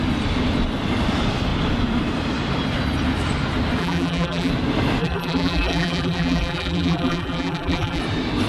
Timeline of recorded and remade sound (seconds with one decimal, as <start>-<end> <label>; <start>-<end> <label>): 0.0-3.8 recorded; 3.8-4.5 remade; 4.5-5.0 recorded; 5.0-8.0 remade; 8.0-8.5 recorded